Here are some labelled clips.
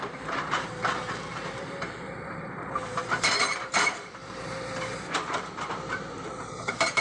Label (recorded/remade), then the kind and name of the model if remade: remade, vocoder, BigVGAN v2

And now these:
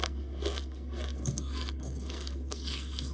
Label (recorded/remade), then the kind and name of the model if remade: remade, codec, SNAC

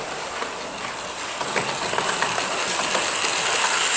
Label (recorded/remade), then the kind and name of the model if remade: recorded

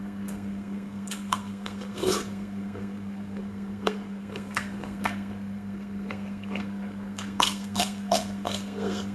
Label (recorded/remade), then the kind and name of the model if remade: remade, codec, SNAC